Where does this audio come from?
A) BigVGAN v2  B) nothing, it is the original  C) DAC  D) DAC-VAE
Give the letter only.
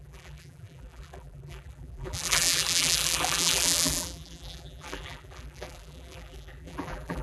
A